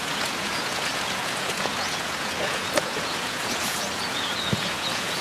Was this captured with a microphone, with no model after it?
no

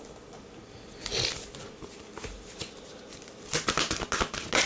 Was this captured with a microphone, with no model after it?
yes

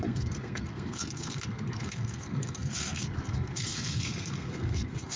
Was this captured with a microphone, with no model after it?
no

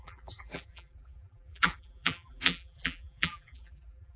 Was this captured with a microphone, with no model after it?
no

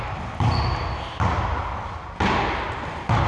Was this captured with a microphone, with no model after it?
yes